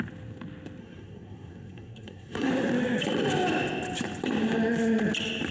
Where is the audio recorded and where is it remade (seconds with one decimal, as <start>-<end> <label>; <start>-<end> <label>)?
0.0-0.8 recorded; 0.8-2.5 remade; 2.5-5.5 recorded